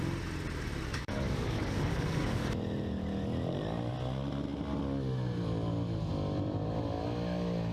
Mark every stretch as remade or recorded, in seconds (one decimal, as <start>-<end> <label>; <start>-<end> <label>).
0.0-0.9 recorded; 0.9-2.5 remade; 2.5-7.7 recorded

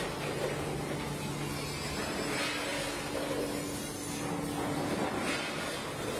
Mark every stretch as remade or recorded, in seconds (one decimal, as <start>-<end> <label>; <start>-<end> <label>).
0.0-6.2 recorded

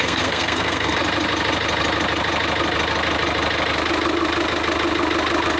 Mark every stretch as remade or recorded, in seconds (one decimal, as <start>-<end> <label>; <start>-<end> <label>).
0.0-1.0 remade; 1.0-5.6 recorded

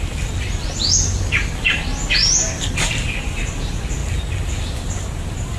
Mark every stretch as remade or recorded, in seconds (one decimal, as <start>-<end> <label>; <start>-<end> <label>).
0.0-5.6 recorded

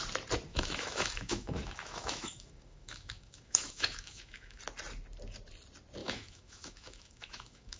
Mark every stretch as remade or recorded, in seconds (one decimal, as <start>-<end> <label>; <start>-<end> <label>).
0.0-0.5 recorded; 0.5-4.6 remade; 4.6-6.0 recorded; 6.0-7.8 remade

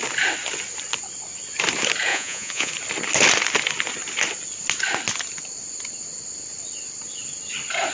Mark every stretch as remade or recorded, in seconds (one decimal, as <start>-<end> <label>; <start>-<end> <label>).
0.0-2.1 recorded; 2.1-2.7 remade; 2.7-7.9 recorded

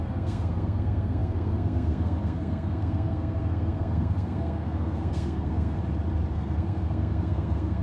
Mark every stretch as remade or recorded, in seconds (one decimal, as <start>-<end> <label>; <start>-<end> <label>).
0.0-5.8 remade; 5.8-6.3 recorded; 6.3-7.8 remade